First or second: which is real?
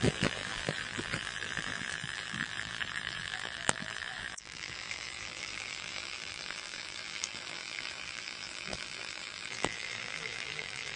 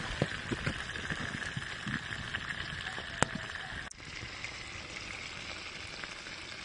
second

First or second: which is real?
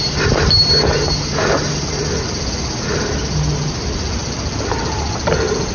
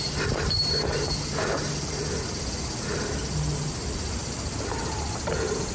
first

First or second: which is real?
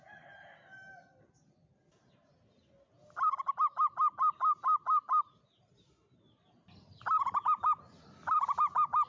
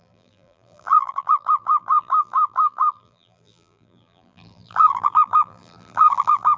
first